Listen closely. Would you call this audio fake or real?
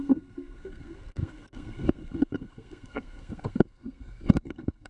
fake